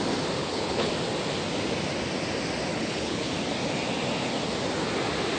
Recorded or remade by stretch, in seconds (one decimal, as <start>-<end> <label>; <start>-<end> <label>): 0.0-0.4 recorded; 0.4-0.9 remade; 0.9-2.7 recorded; 2.7-3.3 remade; 3.3-5.4 recorded